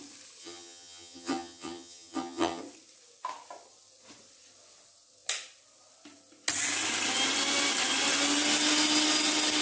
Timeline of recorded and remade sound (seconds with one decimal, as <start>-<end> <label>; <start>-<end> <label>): 0.0-0.4 recorded; 0.4-2.6 remade; 2.6-9.6 recorded